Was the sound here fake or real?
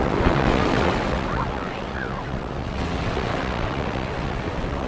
fake